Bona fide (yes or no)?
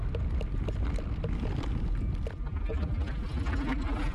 yes